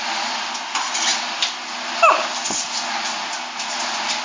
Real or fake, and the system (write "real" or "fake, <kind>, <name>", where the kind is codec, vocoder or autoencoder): real